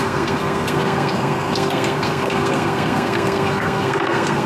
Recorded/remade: remade